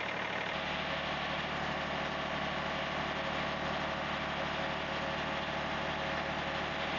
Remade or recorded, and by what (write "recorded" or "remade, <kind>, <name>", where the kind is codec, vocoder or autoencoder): recorded